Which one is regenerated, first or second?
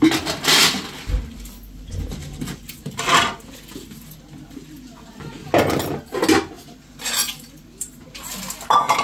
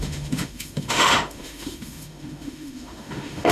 second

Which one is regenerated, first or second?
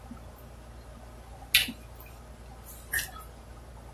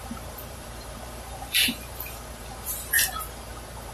second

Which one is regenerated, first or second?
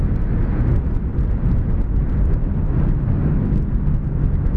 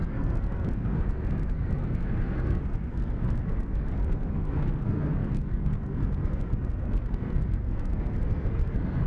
second